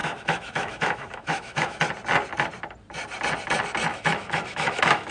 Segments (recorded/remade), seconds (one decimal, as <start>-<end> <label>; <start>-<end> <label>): 0.0-1.8 remade; 1.8-3.9 recorded; 3.9-5.1 remade